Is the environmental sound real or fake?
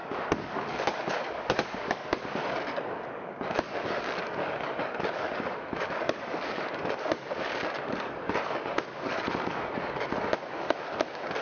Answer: fake